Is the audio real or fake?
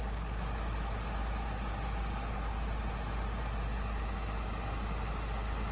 real